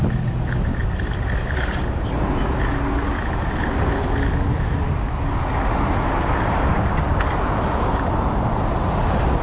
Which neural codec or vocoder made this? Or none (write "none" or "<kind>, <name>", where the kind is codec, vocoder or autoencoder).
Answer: none